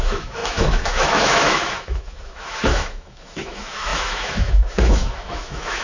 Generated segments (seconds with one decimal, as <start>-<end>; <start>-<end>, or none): 0.0-5.8